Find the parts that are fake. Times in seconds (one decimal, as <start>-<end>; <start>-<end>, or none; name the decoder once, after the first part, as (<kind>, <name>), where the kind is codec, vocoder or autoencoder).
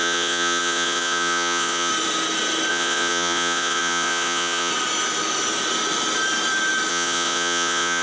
0.0-1.9 (vocoder, Vocos); 2.7-4.7; 6.9-8.0